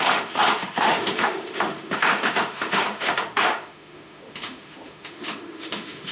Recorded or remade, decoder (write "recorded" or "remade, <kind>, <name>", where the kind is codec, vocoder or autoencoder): remade, autoencoder, DAC-VAE